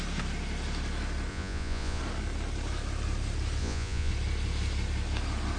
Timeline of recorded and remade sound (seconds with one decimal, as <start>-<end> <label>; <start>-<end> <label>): 0.0-1.3 recorded; 1.3-2.0 remade; 2.0-3.6 recorded; 3.6-4.1 remade; 4.1-5.6 recorded